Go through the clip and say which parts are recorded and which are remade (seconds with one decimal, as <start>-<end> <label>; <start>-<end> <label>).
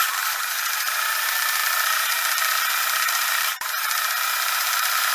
0.0-5.1 remade